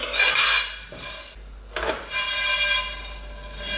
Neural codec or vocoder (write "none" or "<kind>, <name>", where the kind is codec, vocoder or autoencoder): none